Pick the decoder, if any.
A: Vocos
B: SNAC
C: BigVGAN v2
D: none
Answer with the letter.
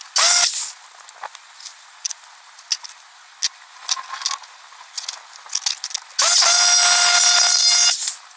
D